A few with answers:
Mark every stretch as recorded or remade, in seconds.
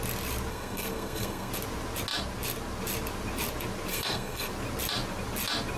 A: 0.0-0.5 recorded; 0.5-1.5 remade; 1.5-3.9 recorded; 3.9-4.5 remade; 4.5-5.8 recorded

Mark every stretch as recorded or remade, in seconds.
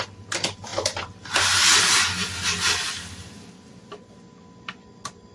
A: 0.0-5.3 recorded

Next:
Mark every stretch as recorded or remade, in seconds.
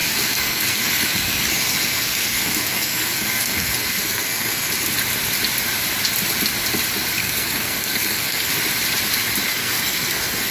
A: 0.0-4.7 remade; 4.7-7.2 recorded; 7.2-8.5 remade; 8.5-9.6 recorded; 9.6-10.5 remade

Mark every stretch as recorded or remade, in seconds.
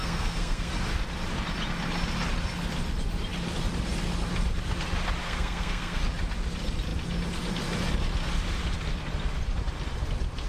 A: 0.0-0.7 remade; 0.7-5.2 recorded; 5.2-6.0 remade; 6.0-10.5 recorded